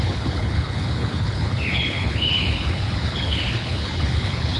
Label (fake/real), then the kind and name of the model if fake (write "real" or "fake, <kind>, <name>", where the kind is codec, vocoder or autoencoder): fake, codec, HILCodec